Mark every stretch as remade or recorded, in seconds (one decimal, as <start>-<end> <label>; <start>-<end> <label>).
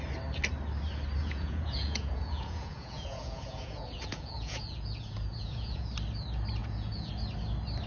0.0-1.2 recorded; 1.2-5.9 remade; 5.9-6.6 recorded; 6.6-7.1 remade; 7.1-7.9 recorded